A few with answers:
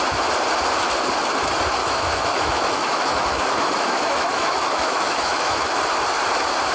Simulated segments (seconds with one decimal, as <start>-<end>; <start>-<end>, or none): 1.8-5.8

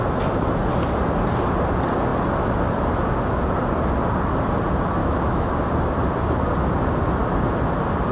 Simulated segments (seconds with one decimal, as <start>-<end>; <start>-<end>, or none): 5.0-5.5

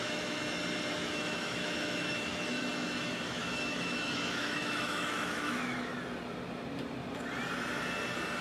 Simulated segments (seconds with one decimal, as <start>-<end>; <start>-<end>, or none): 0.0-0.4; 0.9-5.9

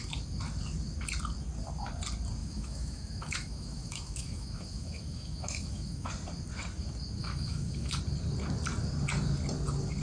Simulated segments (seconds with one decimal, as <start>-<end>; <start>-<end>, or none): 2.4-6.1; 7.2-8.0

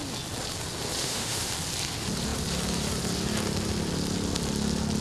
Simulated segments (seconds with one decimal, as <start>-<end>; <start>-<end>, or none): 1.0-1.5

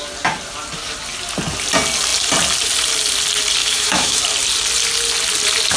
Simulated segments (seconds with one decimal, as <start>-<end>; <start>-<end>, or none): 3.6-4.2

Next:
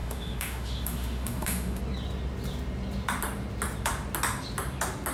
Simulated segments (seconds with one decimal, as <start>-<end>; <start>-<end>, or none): 0.0-1.8